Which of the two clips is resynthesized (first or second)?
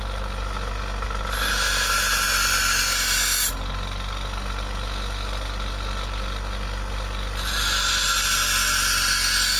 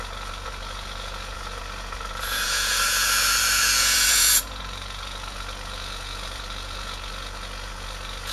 second